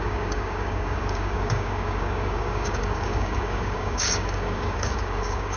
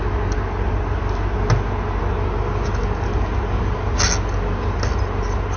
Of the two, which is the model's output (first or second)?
first